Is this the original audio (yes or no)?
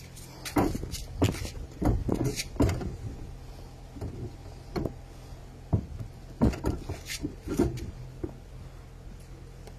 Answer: yes